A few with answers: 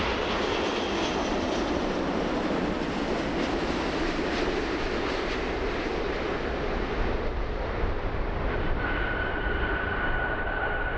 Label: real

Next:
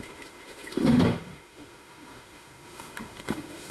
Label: fake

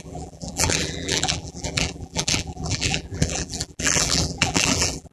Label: fake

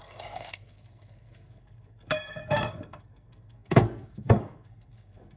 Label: fake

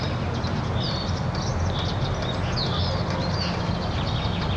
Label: real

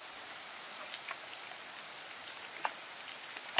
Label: real